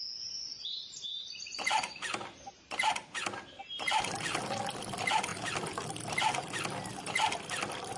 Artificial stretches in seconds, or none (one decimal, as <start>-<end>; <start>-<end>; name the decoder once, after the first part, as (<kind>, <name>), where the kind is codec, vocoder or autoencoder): 0.5-4.4 (vocoder, BigVGAN v2)